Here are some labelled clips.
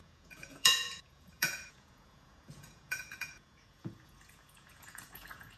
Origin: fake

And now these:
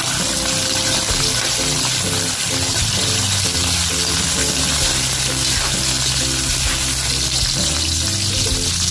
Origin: real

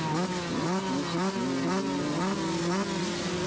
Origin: real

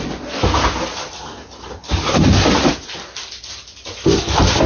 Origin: real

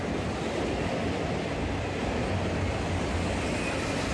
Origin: real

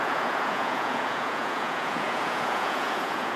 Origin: fake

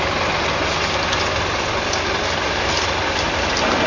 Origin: real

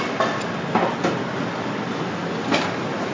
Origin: real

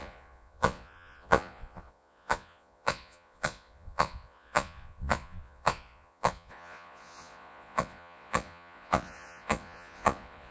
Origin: fake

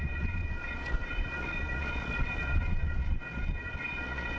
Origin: fake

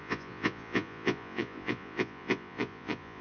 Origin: fake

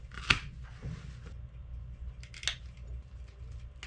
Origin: real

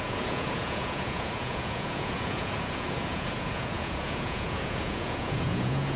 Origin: fake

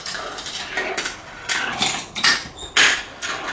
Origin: real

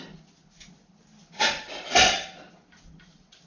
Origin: real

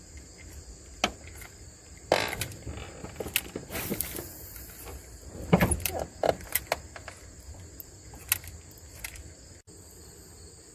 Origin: real